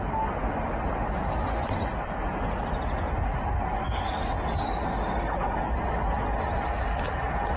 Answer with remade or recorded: recorded